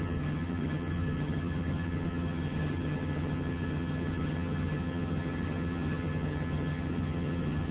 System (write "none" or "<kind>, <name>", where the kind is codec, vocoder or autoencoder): vocoder, HiFi-GAN